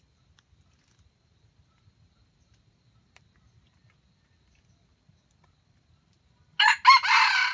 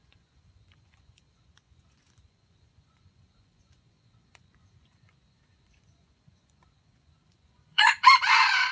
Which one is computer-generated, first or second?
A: second